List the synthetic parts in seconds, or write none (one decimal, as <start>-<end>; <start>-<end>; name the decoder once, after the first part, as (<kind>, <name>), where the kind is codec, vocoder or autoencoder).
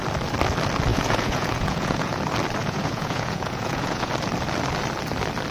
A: 0.9-2.2 (vocoder, Vocos); 2.6-4.1